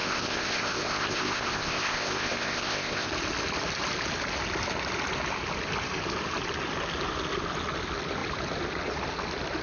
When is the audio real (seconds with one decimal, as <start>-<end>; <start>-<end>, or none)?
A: 3.1-9.6